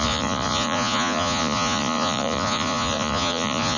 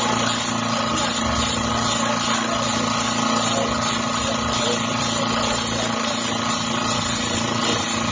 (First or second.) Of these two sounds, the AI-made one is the first